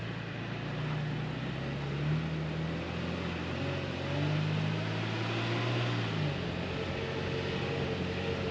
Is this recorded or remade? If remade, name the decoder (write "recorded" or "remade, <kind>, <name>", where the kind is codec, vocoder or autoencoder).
recorded